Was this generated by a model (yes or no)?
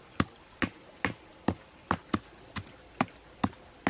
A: no